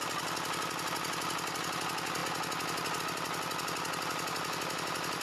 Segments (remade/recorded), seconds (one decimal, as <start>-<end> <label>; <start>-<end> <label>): 0.0-5.2 recorded